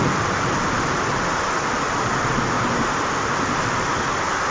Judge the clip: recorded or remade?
recorded